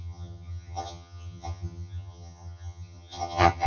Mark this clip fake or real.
fake